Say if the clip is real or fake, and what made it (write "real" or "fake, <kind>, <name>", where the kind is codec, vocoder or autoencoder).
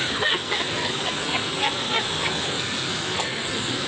fake, codec, SNAC